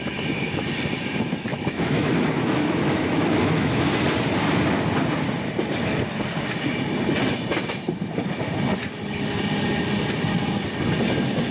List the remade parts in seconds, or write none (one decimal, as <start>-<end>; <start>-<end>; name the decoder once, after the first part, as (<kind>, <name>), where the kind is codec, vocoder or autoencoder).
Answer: 1.5-4.0 (autoencoder, DAC-VAE)